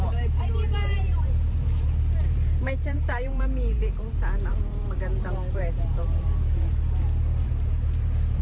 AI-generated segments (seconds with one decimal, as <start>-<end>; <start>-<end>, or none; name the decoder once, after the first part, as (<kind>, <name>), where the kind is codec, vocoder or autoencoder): 0.0-8.4 (vocoder, BigVGAN v2)